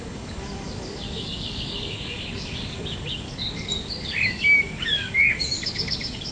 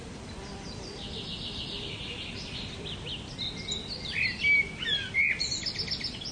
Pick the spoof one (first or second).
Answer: first